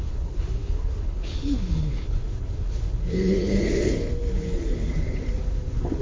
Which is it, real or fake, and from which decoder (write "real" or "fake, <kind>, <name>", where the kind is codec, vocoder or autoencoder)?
fake, codec, HILCodec